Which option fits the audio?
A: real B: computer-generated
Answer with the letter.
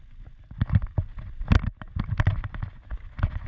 A